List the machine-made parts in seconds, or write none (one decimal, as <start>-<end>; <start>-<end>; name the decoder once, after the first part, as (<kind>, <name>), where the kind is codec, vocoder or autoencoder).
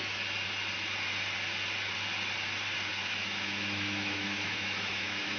3.0-5.4 (autoencoder, DAC-VAE)